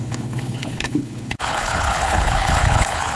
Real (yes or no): no